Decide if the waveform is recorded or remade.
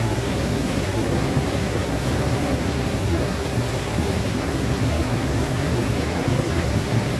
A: remade